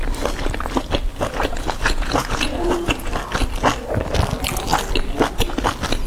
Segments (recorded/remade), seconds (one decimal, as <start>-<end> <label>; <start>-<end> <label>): 0.0-1.1 recorded; 1.1-3.1 remade; 3.1-6.1 recorded